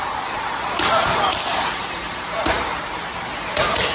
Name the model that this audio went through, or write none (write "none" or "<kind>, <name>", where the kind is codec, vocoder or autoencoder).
none